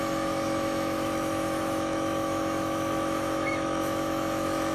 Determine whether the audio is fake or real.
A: fake